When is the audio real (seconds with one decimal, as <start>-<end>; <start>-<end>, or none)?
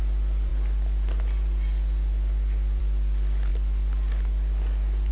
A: 0.0-5.1